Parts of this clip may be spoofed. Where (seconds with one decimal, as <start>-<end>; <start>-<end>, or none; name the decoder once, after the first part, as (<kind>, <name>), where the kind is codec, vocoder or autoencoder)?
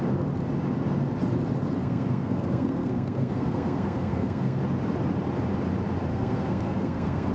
1.8-4.6 (codec, SNAC); 6.1-7.3